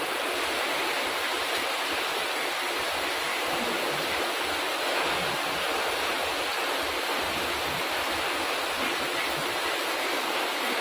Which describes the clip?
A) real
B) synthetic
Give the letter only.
B